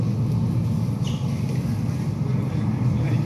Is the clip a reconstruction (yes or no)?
no